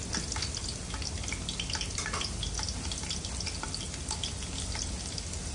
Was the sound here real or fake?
real